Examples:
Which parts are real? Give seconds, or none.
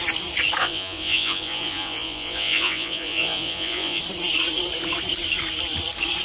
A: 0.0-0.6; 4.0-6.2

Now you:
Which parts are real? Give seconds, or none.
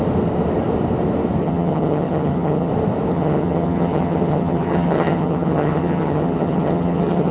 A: 0.0-1.4; 2.7-3.1